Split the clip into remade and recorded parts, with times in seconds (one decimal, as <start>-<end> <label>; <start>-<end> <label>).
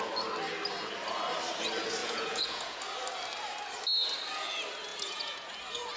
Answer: 0.0-2.0 recorded; 2.0-2.8 remade; 2.8-4.9 recorded; 4.9-5.6 remade; 5.6-6.0 recorded